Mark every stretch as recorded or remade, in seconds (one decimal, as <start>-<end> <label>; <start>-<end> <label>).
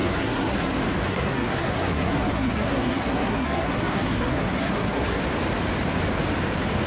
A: 0.0-0.7 remade; 0.7-1.1 recorded; 1.1-5.2 remade; 5.2-6.9 recorded